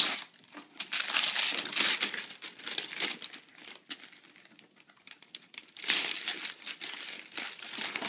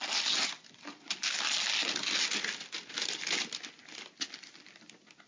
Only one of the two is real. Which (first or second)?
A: second